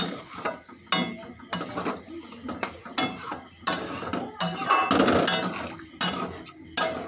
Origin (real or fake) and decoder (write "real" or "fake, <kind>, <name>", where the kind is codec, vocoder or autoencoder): real